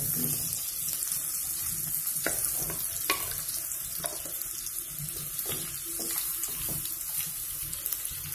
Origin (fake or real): real